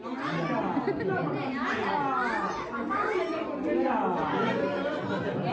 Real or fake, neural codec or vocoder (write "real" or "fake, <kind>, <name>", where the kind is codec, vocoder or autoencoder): real